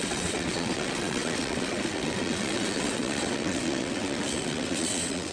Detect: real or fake fake